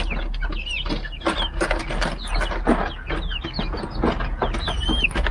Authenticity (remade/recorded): recorded